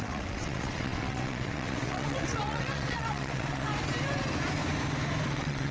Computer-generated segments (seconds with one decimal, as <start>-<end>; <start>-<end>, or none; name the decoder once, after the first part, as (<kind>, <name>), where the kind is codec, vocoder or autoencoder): 0.0-3.7 (vocoder, WaveNeXt); 5.3-5.7